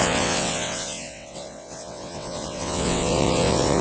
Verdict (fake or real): fake